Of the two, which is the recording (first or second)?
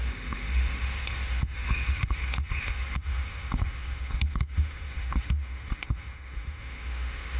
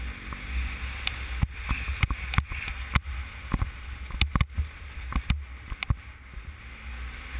second